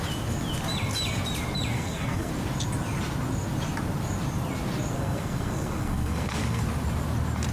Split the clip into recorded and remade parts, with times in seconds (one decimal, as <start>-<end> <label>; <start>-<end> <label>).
0.0-1.7 recorded; 1.7-2.3 remade; 2.3-4.9 recorded; 4.9-6.6 remade; 6.6-7.5 recorded